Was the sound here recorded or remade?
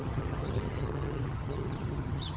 remade